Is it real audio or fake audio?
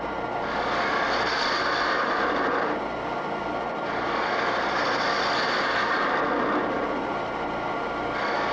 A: real